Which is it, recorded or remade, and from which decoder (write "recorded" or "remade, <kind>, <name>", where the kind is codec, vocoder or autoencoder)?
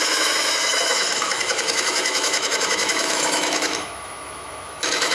remade, autoencoder, DAC-VAE